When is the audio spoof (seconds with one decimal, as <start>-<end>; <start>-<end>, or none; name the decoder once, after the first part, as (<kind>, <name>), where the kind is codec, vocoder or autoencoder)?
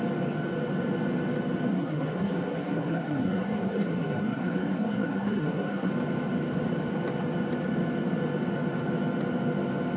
1.7-5.9 (codec, SNAC)